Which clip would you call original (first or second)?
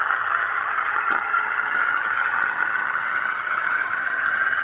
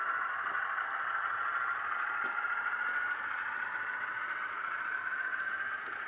second